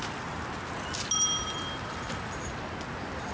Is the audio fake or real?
real